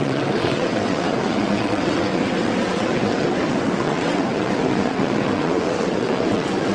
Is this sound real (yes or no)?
no